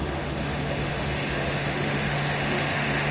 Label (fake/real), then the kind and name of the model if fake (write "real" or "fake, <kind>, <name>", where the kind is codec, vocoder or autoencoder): fake, autoencoder, DAC-VAE